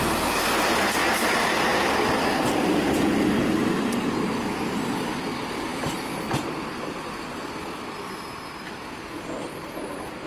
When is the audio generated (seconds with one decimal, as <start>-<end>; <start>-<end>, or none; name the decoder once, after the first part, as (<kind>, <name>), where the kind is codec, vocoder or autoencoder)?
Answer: none